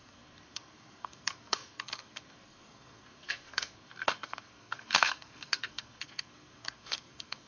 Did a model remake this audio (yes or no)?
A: yes